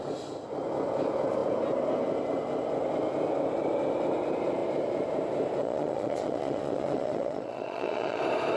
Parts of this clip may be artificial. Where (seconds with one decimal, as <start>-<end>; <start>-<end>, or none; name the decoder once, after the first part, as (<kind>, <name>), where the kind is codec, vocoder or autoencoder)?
5.6-8.2 (vocoder, Vocos)